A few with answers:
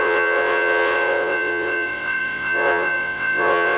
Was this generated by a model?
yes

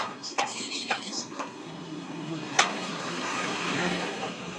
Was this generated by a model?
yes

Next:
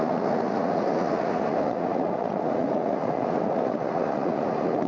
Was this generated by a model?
yes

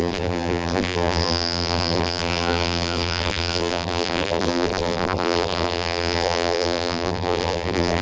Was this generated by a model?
yes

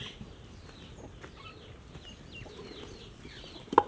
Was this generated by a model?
no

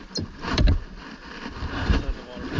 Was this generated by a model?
yes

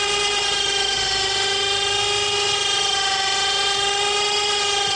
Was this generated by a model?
no